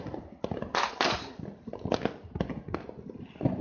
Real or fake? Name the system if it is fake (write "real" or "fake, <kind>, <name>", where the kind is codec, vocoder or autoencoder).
real